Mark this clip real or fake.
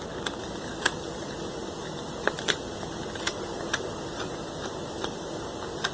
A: real